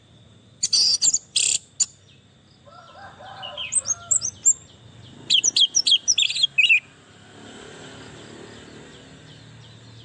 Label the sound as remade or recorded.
recorded